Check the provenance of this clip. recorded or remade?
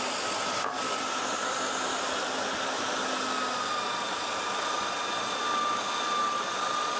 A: recorded